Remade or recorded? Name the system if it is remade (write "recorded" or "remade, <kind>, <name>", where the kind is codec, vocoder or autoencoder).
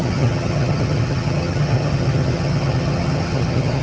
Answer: remade, vocoder, HiFi-GAN